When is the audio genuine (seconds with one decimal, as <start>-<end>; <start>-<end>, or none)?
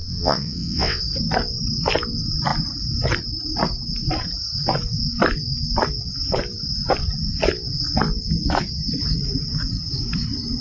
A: 1.0-10.6